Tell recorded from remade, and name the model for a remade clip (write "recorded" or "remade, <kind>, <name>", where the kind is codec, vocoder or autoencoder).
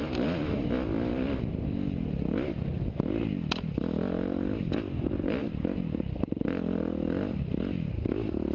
recorded